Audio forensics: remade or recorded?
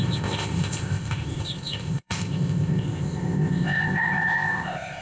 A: remade